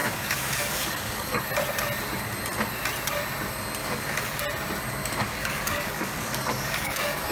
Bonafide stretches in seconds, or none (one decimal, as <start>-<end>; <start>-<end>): 1.5-3.8; 4.4-5.0